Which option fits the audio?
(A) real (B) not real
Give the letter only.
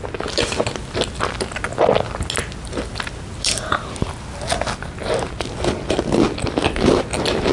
A